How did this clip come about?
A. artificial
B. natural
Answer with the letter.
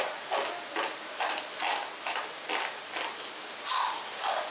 B